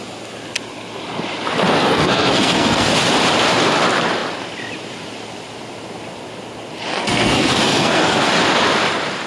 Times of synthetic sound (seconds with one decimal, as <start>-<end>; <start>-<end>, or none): 1.8-2.9; 6.9-8.3